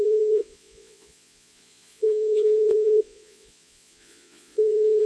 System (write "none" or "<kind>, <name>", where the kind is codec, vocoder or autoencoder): vocoder, Vocos